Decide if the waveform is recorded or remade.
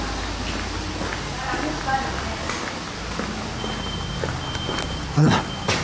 recorded